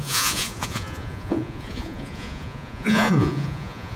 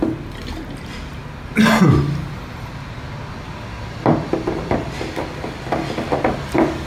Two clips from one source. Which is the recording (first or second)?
second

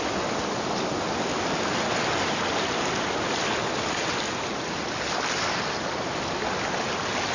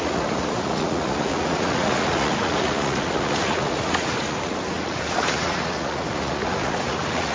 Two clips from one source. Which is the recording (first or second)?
first